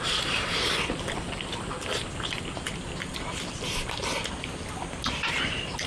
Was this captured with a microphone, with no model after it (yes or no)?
yes